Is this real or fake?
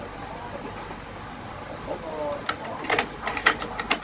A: real